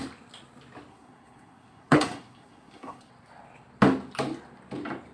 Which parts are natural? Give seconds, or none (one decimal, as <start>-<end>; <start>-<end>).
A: 0.0-0.9; 3.1-5.1